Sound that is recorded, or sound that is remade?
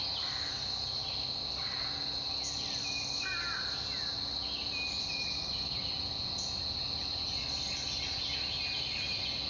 recorded